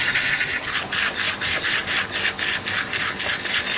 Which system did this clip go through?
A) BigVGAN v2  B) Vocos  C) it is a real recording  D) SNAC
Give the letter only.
C